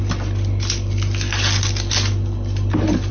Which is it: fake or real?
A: real